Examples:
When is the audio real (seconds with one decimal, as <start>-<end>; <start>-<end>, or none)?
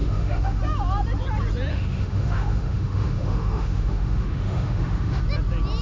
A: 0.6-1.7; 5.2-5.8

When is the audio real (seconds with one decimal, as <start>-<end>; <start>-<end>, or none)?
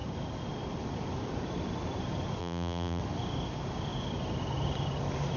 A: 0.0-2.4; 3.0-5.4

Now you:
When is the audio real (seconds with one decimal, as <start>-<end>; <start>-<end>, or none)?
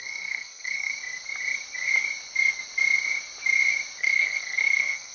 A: 0.9-4.0